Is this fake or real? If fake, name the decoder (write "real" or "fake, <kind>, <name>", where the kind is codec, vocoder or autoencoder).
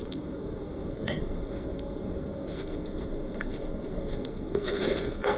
fake, codec, SNAC